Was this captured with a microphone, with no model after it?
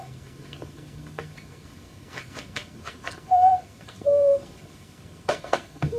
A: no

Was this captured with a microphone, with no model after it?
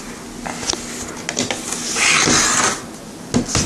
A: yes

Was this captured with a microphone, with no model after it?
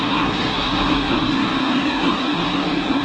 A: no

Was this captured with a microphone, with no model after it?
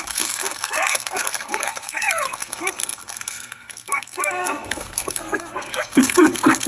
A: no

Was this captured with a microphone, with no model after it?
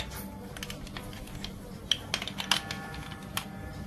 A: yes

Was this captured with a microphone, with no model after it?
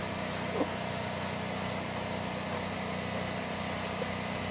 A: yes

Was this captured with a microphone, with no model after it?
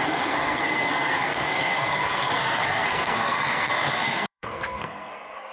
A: no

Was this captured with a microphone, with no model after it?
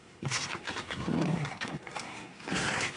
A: no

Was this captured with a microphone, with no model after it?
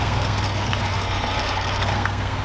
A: no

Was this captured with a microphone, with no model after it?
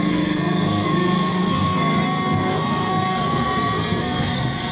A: no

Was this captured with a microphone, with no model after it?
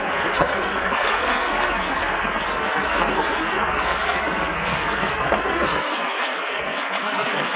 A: no